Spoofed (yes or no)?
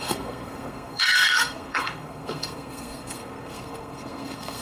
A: yes